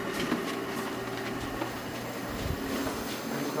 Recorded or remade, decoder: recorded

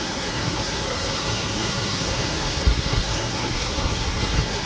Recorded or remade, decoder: remade, codec, SNAC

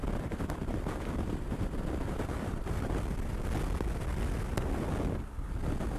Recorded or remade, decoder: recorded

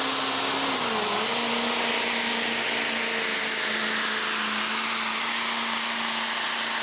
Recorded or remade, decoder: recorded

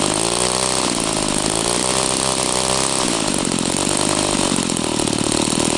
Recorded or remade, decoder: recorded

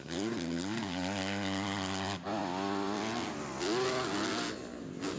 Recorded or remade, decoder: recorded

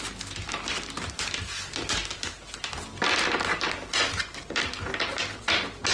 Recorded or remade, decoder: recorded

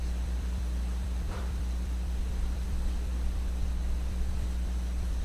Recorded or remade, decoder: remade, vocoder, BigVGAN v2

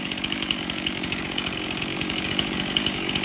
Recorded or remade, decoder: remade, codec, DAC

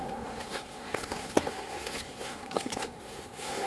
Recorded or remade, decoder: remade, codec, SNAC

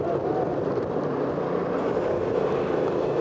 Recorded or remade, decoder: remade, vocoder, BigVGAN v2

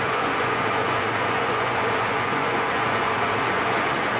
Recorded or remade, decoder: remade, vocoder, Vocos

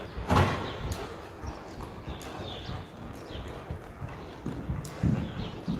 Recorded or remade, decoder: recorded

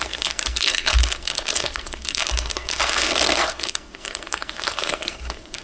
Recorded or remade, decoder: remade, codec, SNAC